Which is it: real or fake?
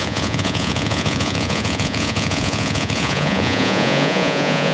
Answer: fake